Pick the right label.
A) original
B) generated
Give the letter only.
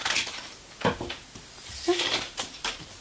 A